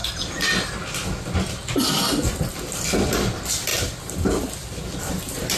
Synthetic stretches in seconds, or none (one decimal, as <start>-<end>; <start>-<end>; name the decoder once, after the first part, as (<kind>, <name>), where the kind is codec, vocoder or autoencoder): 3.7-5.6 (vocoder, BigVGAN v2)